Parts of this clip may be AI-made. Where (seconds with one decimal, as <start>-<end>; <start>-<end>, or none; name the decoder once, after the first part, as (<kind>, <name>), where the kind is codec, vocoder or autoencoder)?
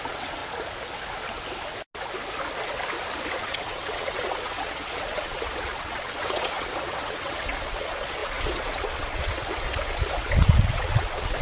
0.0-0.4 (vocoder, WaveNeXt); 3.4-11.4